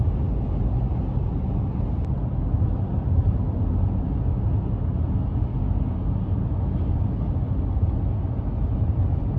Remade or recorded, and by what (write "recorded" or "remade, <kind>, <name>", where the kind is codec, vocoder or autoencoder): recorded